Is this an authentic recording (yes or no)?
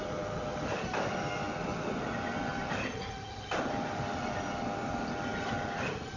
yes